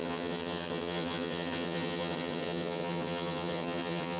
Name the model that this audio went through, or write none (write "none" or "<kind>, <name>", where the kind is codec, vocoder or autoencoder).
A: vocoder, HiFi-GAN